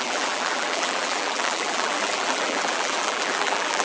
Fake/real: fake